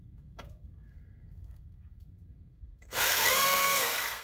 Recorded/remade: remade